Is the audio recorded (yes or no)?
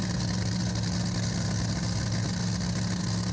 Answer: yes